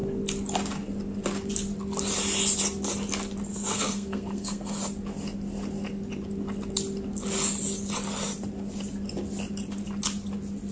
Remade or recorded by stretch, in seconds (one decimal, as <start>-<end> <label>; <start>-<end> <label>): 0.0-3.5 recorded; 3.5-4.8 remade; 4.8-10.7 recorded